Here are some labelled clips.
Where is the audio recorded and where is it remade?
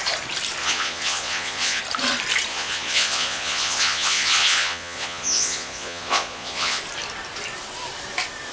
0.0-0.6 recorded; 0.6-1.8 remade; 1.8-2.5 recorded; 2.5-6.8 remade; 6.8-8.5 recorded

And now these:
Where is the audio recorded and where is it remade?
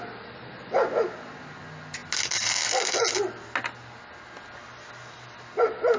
0.0-6.0 recorded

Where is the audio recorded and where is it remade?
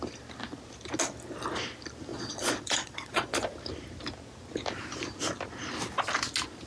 0.0-2.1 recorded; 2.1-3.5 remade; 3.5-6.7 recorded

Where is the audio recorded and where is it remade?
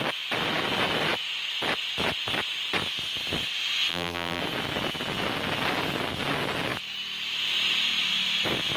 0.0-3.9 recorded; 3.9-4.4 remade; 4.4-8.8 recorded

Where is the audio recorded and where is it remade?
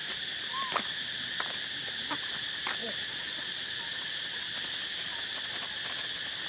0.0-6.5 recorded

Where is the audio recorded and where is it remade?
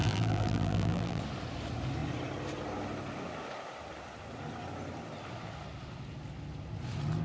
0.0-1.2 remade; 1.2-7.2 recorded